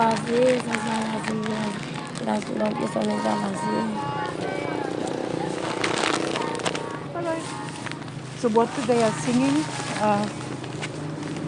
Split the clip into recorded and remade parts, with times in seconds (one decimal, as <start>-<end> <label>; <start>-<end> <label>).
0.0-0.8 recorded; 0.8-2.6 remade; 2.6-5.2 recorded; 5.2-6.4 remade; 6.4-11.5 recorded